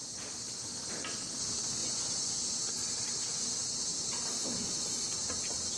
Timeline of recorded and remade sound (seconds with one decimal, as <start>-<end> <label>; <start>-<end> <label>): 0.0-1.8 recorded; 1.8-2.3 remade; 2.3-5.8 recorded